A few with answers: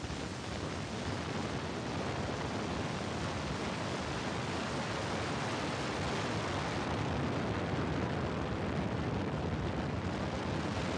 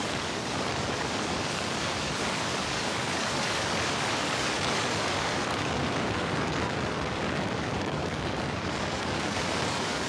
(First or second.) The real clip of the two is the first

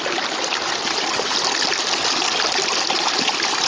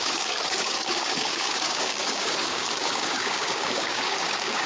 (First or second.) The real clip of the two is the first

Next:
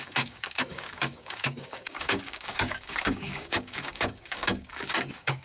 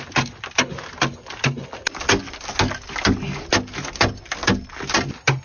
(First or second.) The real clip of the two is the second